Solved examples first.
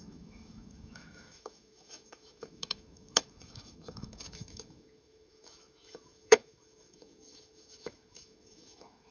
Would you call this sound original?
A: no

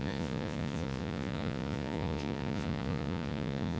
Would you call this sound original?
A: no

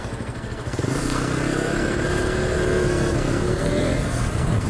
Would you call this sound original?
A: no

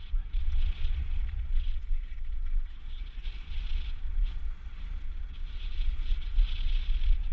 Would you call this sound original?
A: no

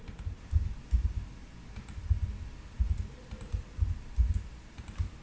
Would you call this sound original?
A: yes